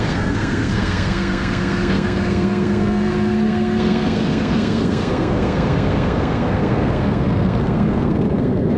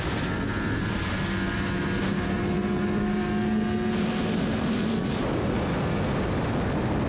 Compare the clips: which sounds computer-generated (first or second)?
first